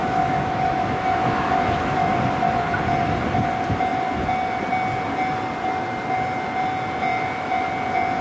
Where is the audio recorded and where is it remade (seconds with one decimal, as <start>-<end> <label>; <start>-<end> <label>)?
0.0-2.1 remade; 2.1-7.1 recorded; 7.1-7.7 remade; 7.7-8.2 recorded

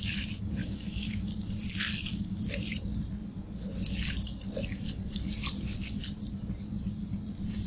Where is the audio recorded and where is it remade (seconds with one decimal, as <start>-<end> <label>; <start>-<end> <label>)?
0.0-0.6 recorded; 0.6-1.2 remade; 1.2-7.7 recorded